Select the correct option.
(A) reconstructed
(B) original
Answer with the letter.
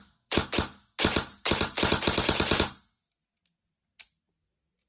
B